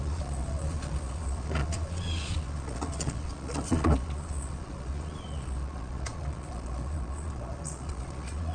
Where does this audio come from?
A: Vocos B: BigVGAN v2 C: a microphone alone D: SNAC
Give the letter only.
A